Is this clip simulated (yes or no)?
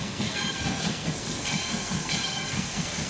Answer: yes